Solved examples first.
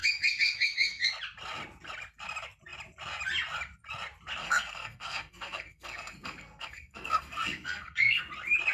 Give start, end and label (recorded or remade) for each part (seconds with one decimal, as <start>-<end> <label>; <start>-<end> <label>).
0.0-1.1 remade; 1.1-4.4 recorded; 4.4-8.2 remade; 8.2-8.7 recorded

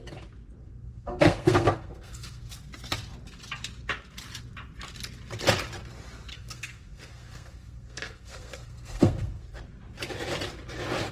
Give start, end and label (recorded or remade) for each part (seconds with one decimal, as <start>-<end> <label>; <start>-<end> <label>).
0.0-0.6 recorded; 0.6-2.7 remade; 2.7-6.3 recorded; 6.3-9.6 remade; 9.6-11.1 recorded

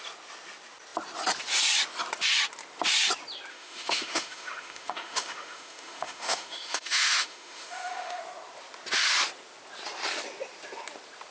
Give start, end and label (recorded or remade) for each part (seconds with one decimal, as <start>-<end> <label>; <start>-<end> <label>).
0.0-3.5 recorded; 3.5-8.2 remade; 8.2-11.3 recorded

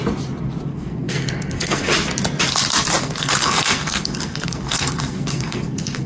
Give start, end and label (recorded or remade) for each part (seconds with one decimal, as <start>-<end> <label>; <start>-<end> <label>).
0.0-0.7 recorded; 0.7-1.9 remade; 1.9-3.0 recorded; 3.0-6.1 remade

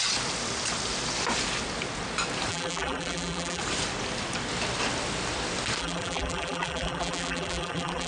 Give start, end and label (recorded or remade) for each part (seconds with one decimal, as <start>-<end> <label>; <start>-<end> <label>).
0.0-2.5 recorded; 2.5-3.6 remade; 3.6-5.8 recorded; 5.8-8.1 remade